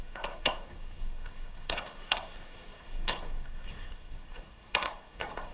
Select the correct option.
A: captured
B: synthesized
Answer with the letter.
B